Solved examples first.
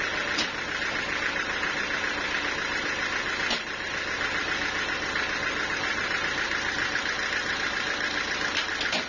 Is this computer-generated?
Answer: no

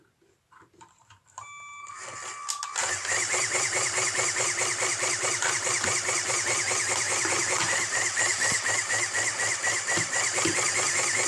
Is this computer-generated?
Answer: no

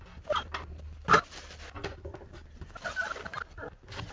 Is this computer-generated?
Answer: no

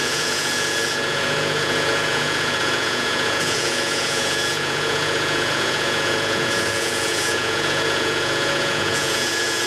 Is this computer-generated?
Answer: yes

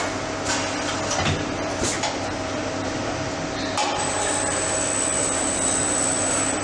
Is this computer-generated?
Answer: no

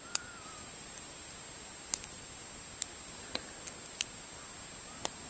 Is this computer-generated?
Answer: no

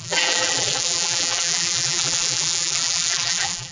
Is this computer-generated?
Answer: yes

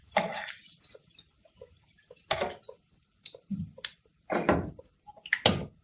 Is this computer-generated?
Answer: no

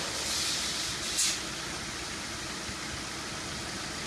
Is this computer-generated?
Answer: no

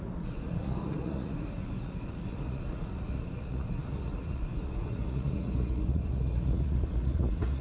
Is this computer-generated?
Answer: yes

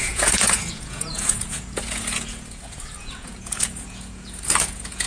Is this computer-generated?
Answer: yes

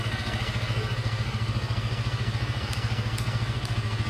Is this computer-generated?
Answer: yes